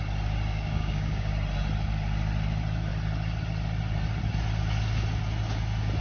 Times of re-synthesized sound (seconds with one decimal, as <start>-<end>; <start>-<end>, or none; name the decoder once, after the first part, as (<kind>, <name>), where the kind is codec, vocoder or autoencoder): 0.5-1.3 (codec, DAC)